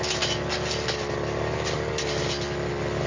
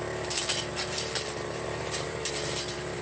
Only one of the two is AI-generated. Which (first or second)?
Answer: second